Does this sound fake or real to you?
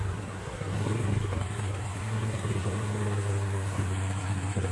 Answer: fake